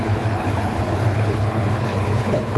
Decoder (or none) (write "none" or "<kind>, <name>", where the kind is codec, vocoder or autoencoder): codec, HILCodec